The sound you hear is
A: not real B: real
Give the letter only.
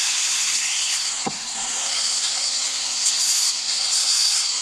A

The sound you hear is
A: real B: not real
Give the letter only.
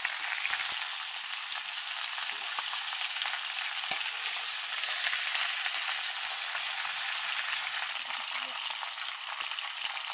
A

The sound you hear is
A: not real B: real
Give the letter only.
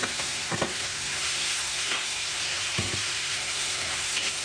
A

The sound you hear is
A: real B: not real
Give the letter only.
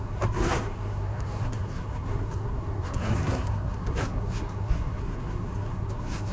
B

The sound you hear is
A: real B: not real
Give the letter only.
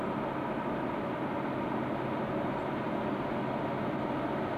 A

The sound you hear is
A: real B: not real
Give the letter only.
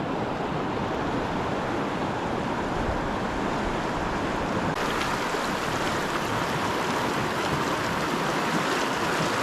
A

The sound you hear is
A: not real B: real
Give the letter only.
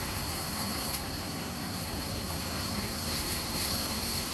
A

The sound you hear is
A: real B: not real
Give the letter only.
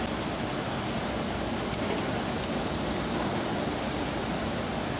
A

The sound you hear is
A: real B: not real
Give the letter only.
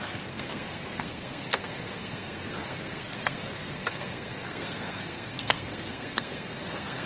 B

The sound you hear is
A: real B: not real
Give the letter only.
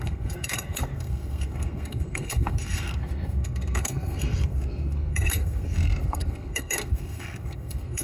B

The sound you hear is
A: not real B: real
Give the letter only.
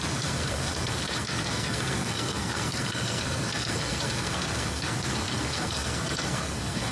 A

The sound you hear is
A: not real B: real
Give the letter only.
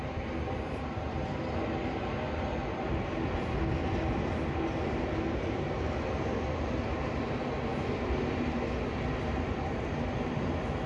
B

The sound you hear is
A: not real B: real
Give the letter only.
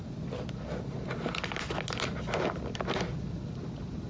B